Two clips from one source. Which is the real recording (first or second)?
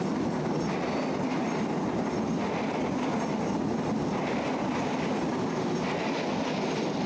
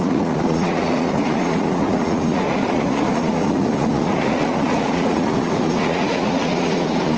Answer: first